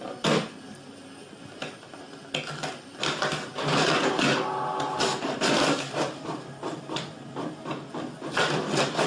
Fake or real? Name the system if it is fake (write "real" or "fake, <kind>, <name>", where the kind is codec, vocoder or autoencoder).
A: real